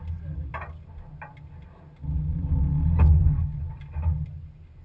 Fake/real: real